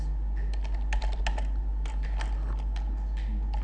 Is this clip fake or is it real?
real